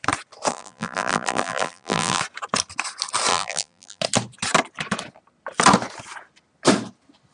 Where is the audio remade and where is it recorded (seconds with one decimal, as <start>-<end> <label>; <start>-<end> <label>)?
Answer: 0.0-0.5 recorded; 0.5-2.2 remade; 2.2-3.3 recorded; 3.3-4.0 remade; 4.0-7.3 recorded